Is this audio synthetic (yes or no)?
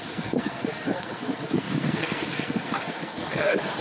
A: yes